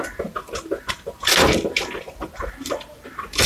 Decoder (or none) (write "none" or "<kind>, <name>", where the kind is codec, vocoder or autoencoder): none